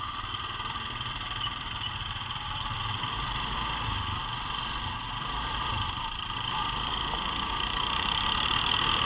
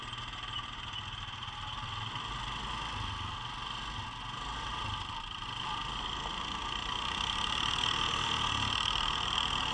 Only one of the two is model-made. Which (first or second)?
first